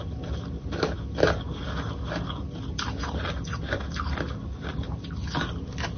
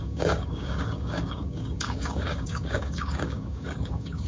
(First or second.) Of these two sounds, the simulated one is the second